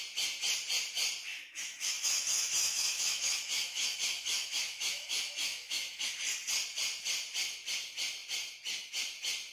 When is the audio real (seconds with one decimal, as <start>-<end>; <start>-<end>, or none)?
0.0-1.3; 6.1-9.5